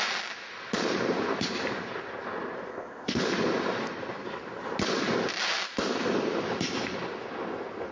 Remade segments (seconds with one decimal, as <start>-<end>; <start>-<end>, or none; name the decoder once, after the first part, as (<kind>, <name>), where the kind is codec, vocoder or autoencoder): 2.7-3.2 (codec, ZipCodec)